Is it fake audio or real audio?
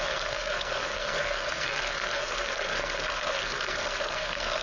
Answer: fake